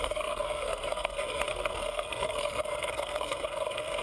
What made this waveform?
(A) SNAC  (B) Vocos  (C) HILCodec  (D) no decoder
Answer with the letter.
A